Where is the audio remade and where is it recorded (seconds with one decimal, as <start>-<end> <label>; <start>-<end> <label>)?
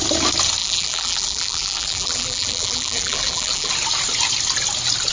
0.0-0.6 recorded; 0.6-3.7 remade; 3.7-5.1 recorded